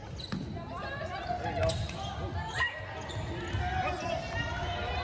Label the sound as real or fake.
real